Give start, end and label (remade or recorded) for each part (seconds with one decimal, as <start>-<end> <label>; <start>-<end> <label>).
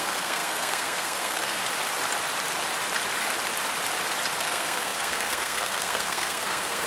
0.0-1.6 remade; 1.6-4.4 recorded; 4.4-6.9 remade